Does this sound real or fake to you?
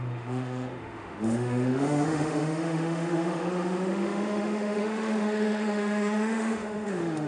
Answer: fake